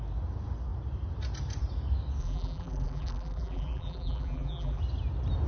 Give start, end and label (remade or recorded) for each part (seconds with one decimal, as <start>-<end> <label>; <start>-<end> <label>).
0.0-2.2 recorded; 2.2-4.8 remade; 4.8-5.5 recorded